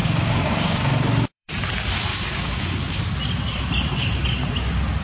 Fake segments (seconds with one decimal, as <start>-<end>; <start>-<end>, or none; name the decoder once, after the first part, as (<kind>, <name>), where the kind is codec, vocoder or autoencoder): 0.0-1.5 (codec, DAC); 2.1-3.0